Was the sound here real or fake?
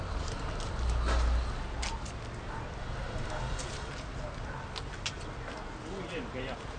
real